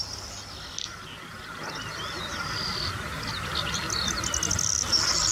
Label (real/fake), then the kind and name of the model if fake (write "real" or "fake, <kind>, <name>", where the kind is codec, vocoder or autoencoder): real